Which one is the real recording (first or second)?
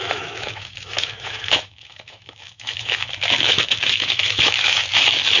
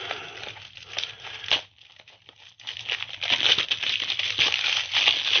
second